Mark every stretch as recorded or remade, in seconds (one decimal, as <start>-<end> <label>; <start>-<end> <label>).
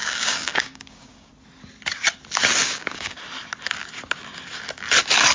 0.0-1.3 remade; 1.3-2.6 recorded; 2.6-3.2 remade; 3.2-5.3 recorded